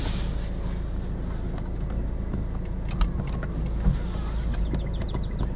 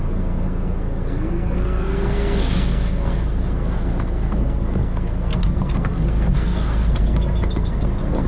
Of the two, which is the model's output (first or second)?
second